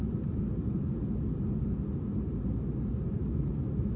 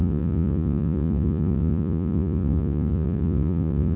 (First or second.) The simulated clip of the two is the second